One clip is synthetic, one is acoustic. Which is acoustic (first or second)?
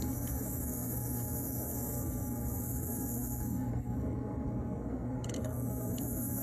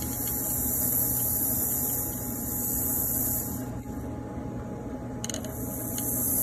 second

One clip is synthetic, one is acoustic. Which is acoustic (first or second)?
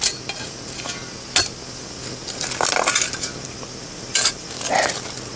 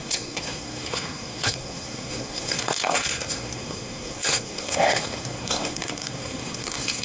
first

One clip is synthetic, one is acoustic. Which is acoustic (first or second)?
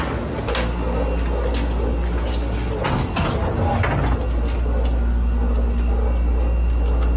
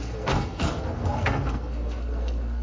first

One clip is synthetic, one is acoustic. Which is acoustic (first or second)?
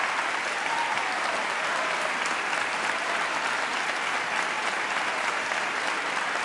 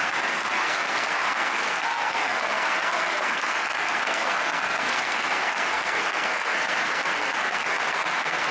first